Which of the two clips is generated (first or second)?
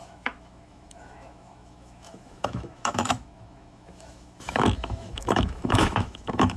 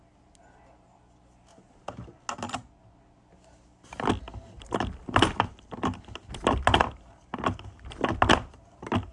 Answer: first